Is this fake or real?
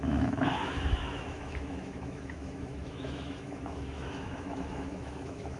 fake